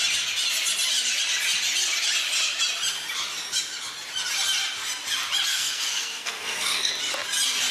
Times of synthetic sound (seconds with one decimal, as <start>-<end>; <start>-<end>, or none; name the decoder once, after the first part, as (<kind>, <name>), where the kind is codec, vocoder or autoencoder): 5.5-6.9 (codec, SNAC)